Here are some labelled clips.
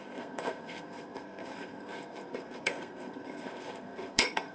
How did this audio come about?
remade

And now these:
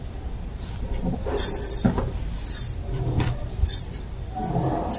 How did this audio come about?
recorded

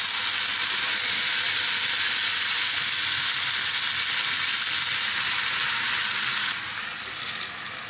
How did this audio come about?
recorded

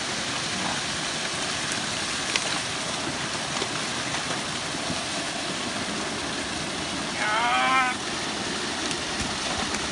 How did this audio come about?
recorded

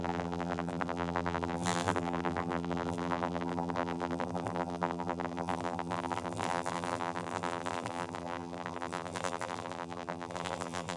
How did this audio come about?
remade